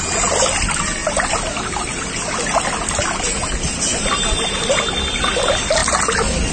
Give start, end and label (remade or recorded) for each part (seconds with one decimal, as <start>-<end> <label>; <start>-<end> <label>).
0.0-5.8 recorded; 5.8-6.5 remade